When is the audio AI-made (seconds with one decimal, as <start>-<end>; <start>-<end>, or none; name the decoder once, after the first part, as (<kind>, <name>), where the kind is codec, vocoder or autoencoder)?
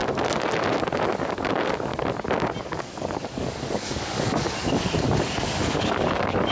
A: 1.1-1.9 (codec, DAC); 2.6-6.5